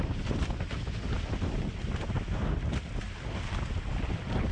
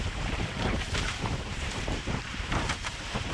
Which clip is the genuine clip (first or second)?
first